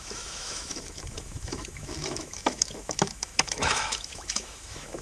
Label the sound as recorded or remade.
remade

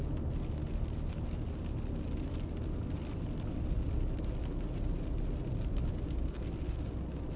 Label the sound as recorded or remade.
recorded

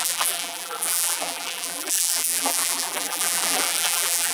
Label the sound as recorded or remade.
remade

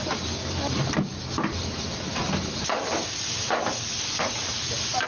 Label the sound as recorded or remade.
recorded